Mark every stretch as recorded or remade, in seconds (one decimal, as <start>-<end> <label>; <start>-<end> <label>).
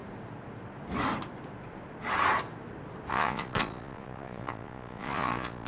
0.0-3.1 recorded; 3.1-5.7 remade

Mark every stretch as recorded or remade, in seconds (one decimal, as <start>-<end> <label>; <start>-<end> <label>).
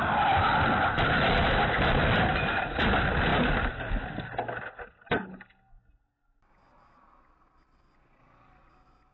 0.0-2.3 recorded; 2.3-2.8 remade; 2.8-9.1 recorded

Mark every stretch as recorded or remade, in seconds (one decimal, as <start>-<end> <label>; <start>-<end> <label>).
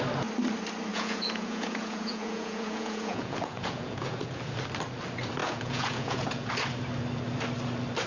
0.0-0.9 recorded; 0.9-4.4 remade; 4.4-5.4 recorded; 5.4-6.5 remade; 6.5-8.1 recorded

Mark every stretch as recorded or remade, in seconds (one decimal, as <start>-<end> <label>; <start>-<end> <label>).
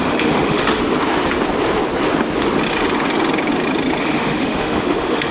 0.0-0.8 remade; 0.8-4.0 recorded; 4.0-5.3 remade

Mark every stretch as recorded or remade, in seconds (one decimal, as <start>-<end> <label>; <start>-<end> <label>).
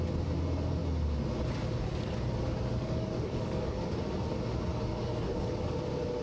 0.0-2.7 recorded; 2.7-3.9 remade; 3.9-4.7 recorded; 4.7-5.7 remade; 5.7-6.2 recorded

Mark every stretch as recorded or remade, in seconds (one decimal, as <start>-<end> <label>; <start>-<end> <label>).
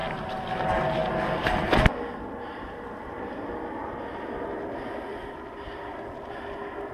0.0-5.1 recorded; 5.1-5.8 remade; 5.8-6.9 recorded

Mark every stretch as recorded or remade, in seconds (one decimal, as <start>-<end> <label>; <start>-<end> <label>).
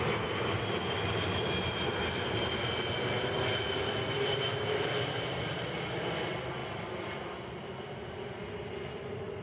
0.0-9.4 recorded